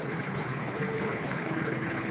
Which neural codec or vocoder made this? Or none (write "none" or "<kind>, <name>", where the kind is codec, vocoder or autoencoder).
codec, HILCodec